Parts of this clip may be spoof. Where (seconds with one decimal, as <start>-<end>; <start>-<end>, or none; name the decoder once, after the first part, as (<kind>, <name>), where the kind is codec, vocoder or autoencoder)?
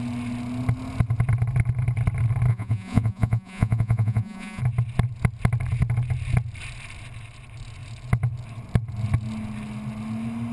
2.5-4.6 (vocoder, Vocos)